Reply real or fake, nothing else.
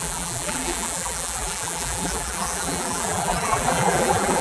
fake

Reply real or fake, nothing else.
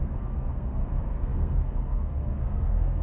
fake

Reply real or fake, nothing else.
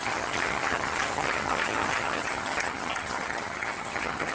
fake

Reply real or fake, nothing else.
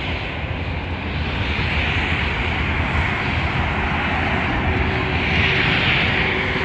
real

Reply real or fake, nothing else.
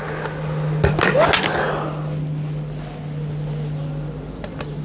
real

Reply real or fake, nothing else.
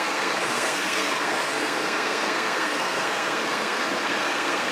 fake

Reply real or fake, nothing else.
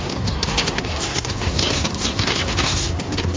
fake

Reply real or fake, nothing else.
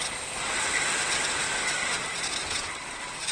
real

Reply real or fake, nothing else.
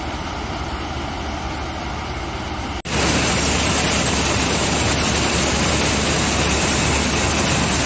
real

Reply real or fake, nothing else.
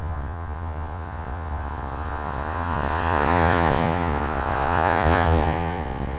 fake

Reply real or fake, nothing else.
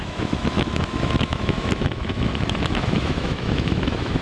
fake